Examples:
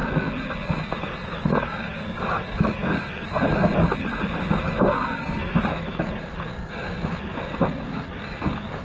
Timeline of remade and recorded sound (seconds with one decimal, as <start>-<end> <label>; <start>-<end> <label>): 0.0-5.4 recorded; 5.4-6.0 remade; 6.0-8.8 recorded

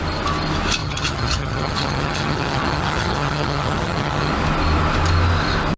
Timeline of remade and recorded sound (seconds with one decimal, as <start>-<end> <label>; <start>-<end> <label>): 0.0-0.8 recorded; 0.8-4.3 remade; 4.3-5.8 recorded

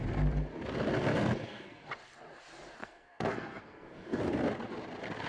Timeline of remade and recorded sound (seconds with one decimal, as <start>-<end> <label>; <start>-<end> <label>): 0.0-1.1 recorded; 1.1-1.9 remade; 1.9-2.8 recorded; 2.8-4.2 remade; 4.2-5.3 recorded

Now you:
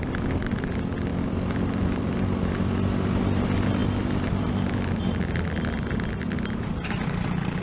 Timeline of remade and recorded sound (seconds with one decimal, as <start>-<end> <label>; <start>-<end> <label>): 0.0-1.1 recorded; 1.1-3.2 remade; 3.2-7.6 recorded